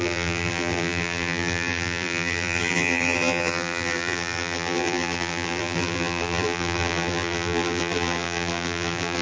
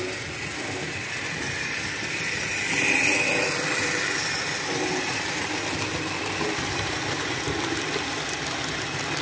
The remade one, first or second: first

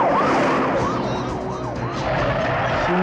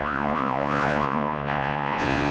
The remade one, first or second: second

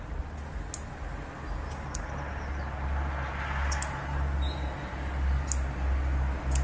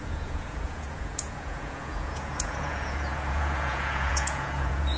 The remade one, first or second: second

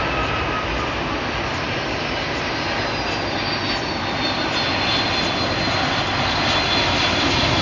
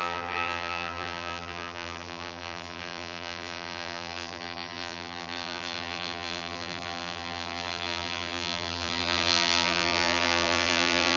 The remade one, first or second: second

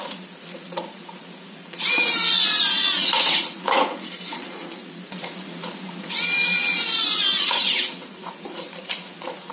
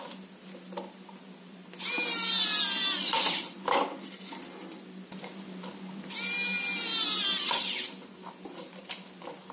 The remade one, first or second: first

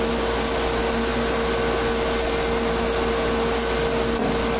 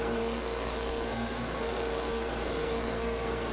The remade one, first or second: second